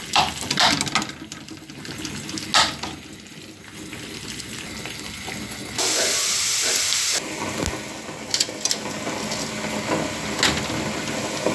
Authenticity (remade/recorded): recorded